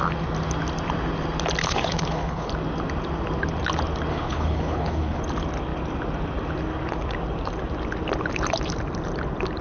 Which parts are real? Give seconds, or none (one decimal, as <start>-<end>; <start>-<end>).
0.0-1.6; 2.5-4.1; 5.2-9.6